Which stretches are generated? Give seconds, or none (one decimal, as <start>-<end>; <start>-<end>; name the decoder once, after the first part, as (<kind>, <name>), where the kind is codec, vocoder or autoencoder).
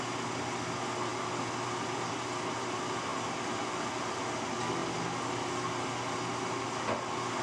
none